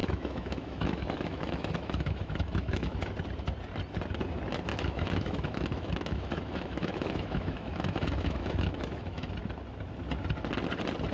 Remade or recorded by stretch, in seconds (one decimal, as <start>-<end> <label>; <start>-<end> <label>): 0.0-3.1 remade; 3.1-4.7 recorded; 4.7-9.3 remade; 9.3-11.1 recorded